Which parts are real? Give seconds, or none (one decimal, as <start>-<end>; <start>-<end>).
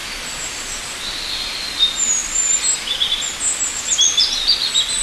0.0-5.0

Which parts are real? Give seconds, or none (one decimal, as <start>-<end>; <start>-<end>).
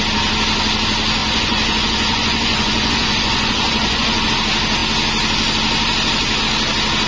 0.0-1.2; 4.3-7.1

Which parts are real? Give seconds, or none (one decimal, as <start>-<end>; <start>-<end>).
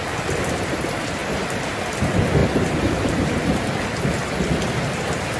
0.0-2.4; 4.5-5.4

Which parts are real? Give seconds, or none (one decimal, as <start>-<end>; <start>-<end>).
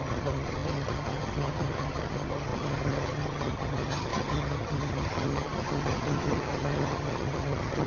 none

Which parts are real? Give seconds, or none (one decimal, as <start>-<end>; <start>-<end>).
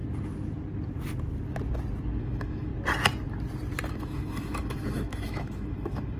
0.0-2.2; 2.7-3.9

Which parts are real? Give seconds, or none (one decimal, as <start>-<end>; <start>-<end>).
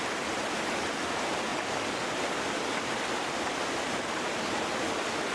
0.0-5.3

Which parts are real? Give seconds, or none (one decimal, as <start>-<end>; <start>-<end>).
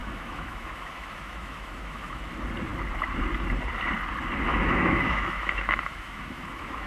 2.2-4.5